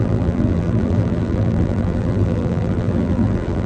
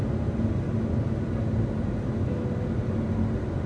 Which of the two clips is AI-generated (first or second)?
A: first